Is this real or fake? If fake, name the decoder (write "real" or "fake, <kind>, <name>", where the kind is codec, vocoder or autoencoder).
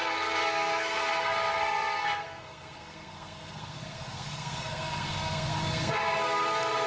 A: fake, codec, SNAC